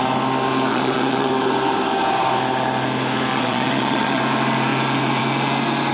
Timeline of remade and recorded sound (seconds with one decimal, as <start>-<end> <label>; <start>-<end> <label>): 0.0-0.7 recorded; 0.7-1.3 remade; 1.3-3.3 recorded; 3.3-4.2 remade; 4.2-5.9 recorded

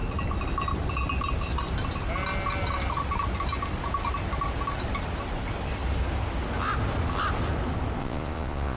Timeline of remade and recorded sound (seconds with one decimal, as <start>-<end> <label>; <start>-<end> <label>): 0.0-8.0 recorded; 8.0-8.8 remade

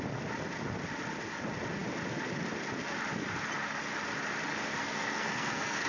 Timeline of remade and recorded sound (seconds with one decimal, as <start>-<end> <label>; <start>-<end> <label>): 0.0-4.8 recorded; 4.8-5.9 remade

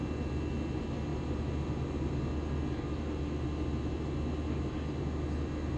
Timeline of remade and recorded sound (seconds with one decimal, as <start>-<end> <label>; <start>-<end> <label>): 0.0-5.8 recorded

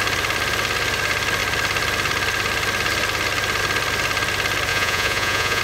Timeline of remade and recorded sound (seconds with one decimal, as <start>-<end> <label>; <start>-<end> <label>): 0.0-4.7 recorded; 4.7-5.6 remade

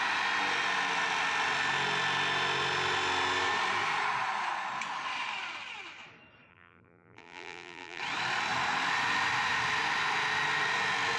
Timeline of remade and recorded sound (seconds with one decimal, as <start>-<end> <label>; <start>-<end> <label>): 0.0-6.5 recorded; 6.5-8.0 remade; 8.0-11.2 recorded

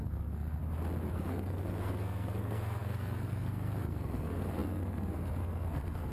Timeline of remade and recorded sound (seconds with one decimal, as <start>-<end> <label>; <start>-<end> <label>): 0.0-0.6 remade; 0.6-1.1 recorded; 1.1-6.1 remade